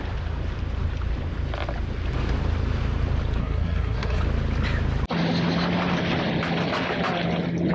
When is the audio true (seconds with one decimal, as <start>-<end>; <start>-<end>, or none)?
0.0-3.4; 4.2-7.7